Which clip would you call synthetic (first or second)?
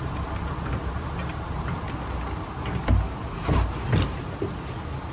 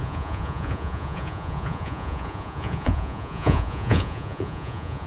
second